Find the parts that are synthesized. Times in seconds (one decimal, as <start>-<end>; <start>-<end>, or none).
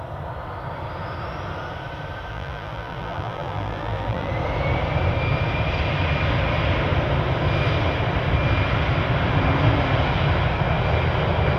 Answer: 2.3-4.3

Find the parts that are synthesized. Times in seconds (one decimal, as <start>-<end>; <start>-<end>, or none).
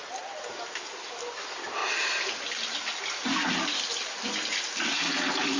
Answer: none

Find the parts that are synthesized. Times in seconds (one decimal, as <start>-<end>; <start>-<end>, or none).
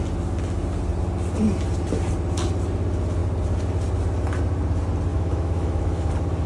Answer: 5.1-6.1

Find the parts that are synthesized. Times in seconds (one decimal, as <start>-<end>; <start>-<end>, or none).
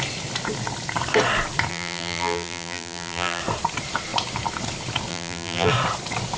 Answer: 1.7-3.4; 5.1-5.7